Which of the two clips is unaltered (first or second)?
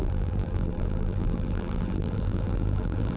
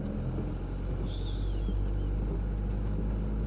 second